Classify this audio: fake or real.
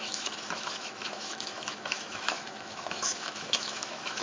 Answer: fake